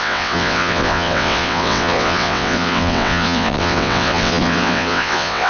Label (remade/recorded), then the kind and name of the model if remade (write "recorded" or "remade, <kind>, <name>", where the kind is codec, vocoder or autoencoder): remade, vocoder, WaveNeXt